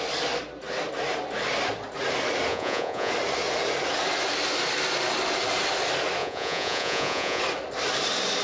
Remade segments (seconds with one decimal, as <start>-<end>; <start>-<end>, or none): 2.5-3.1; 6.2-7.4